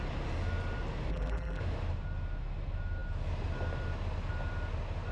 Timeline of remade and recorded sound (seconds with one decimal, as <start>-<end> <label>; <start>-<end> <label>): 0.0-1.1 recorded; 1.1-1.6 remade; 1.6-5.1 recorded